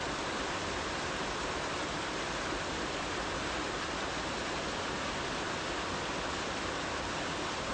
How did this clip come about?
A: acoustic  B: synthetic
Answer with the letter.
A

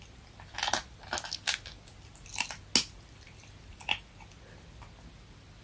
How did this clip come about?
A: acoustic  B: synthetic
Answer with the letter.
A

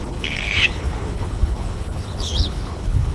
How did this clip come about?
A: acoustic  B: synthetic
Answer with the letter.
B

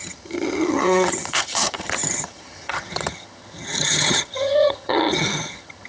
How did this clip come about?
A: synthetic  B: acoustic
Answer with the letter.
A